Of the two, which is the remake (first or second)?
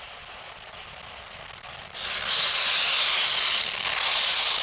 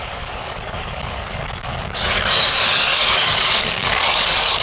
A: second